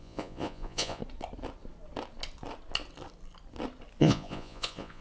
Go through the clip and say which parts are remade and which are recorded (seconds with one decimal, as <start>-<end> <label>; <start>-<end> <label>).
0.0-1.0 remade; 1.0-4.0 recorded; 4.0-5.0 remade